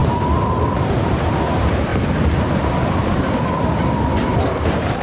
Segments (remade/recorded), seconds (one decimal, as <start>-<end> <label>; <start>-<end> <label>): 0.0-5.0 recorded